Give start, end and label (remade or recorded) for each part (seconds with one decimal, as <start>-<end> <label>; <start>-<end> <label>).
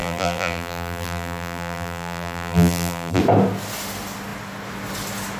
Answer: 0.0-3.2 remade; 3.2-5.4 recorded